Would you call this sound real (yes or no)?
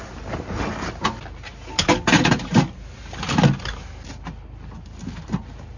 yes